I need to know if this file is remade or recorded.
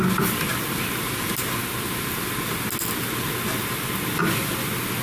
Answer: recorded